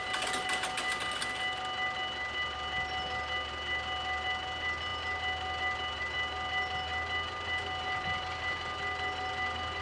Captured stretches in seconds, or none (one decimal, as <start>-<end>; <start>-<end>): 0.0-9.8